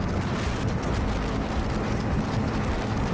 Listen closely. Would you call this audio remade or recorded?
recorded